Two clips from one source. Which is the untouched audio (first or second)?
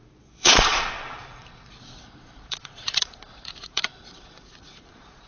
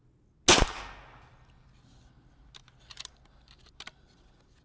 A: second